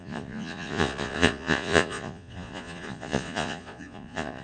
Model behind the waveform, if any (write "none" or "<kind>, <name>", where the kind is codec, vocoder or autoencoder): vocoder, Vocos